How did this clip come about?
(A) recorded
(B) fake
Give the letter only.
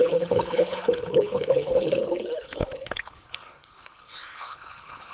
B